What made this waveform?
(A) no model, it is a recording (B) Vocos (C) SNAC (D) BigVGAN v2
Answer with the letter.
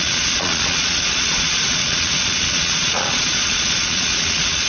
B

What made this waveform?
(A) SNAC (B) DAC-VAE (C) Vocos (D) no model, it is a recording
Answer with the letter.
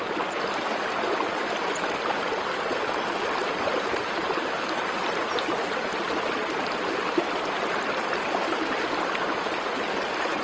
D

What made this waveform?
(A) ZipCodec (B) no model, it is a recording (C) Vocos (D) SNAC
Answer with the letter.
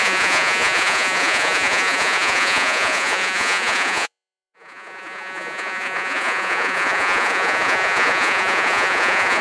C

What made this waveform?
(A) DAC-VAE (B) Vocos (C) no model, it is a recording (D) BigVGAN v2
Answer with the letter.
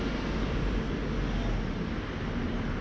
C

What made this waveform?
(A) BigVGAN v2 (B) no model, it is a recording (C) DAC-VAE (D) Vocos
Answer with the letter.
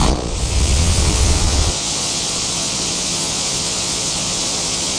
D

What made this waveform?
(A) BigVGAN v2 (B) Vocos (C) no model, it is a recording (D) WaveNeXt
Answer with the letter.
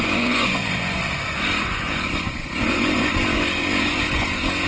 B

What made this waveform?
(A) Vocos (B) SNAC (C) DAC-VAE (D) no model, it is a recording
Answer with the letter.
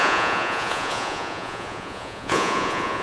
A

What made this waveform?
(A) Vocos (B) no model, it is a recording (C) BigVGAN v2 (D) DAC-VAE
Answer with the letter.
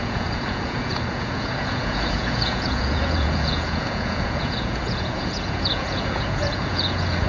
A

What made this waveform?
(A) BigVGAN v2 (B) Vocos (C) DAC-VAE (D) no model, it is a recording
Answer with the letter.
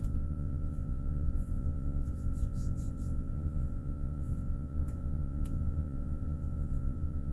B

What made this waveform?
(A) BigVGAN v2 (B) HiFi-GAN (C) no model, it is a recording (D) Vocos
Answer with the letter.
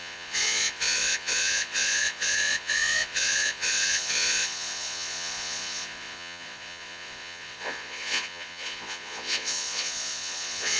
D